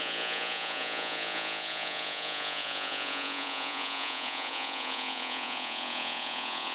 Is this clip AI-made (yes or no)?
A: yes